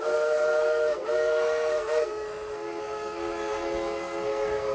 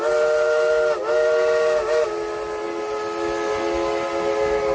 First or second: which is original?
second